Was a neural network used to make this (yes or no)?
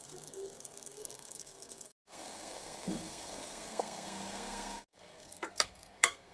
yes